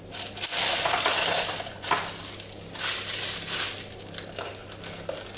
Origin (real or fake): real